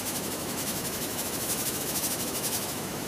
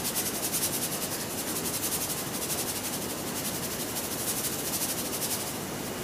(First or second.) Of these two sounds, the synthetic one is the first